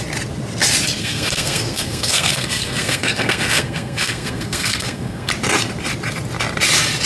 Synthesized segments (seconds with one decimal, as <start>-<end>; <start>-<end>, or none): 1.0-5.3